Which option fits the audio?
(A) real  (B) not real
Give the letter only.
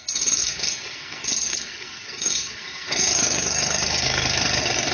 B